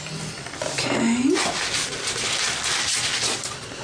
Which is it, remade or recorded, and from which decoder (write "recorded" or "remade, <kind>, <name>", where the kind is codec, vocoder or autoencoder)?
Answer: recorded